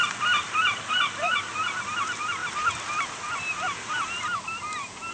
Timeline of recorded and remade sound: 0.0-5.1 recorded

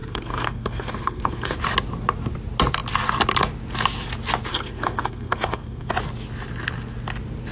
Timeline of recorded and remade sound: 0.0-1.6 remade; 1.6-4.5 recorded; 4.5-5.9 remade; 5.9-7.5 recorded

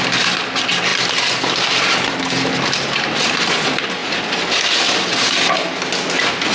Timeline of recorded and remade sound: 0.0-6.5 recorded